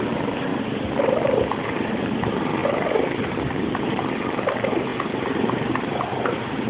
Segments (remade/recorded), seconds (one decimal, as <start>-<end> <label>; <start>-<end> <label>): 0.0-0.5 remade; 0.5-1.6 recorded; 1.6-6.7 remade